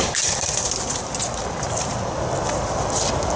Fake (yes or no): no